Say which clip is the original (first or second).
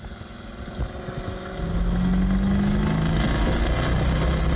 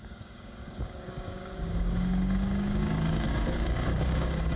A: first